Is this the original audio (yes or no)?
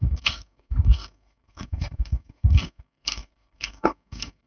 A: no